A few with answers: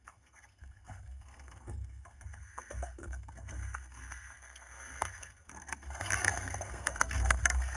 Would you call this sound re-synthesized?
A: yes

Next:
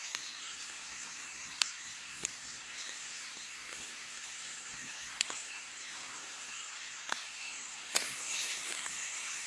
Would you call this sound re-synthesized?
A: yes